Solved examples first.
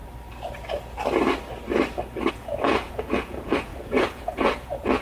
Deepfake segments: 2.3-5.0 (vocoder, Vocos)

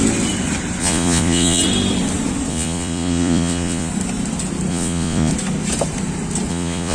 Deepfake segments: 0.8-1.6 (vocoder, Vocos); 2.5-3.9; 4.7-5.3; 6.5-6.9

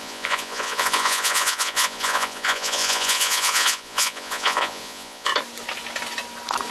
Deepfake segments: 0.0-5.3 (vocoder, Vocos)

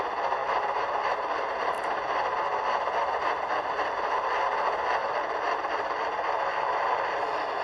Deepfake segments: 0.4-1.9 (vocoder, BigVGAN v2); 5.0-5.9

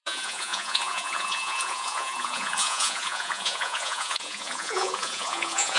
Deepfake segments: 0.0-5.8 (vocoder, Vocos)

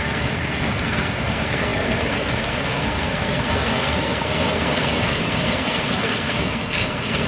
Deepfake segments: 0.0-7.3 (codec, SNAC)